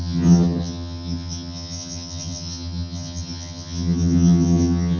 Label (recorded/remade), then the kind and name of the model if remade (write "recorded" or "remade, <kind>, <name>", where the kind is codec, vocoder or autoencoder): remade, vocoder, HiFi-GAN